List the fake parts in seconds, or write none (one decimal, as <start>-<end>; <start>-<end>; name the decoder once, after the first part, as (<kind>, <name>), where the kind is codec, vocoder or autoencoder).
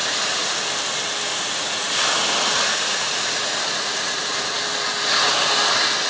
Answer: 0.0-0.6 (vocoder, Vocos); 1.3-1.9; 2.7-4.6